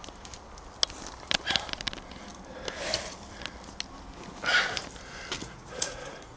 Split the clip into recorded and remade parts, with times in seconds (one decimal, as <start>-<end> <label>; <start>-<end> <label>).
0.0-5.4 recorded; 5.4-6.4 remade